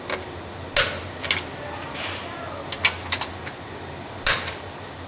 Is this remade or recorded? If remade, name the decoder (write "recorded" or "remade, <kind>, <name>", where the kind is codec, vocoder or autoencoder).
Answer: recorded